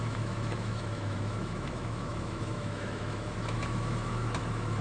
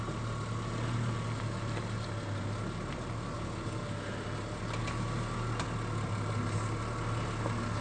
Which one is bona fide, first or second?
second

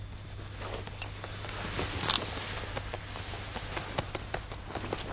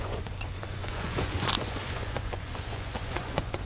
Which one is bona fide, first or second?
first